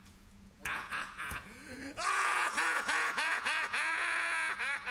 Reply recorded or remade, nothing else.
remade